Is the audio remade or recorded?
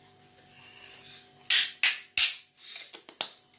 recorded